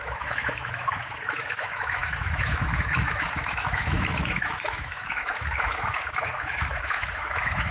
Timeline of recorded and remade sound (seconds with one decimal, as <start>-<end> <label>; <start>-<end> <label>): 0.0-7.7 remade